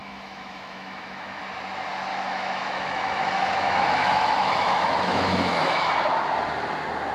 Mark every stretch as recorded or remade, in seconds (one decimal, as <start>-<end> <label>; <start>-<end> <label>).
0.0-1.4 remade; 1.4-2.1 recorded; 2.1-5.9 remade; 5.9-7.1 recorded